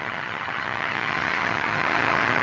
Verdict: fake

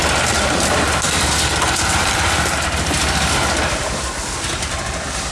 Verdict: fake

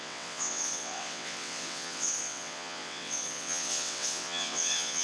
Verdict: fake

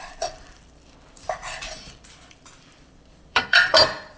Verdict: fake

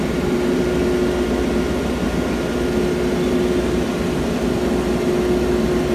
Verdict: real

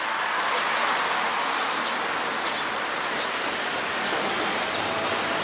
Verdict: real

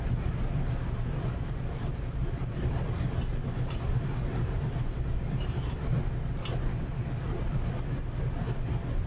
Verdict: real